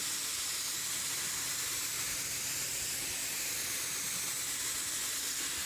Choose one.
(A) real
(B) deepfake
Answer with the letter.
A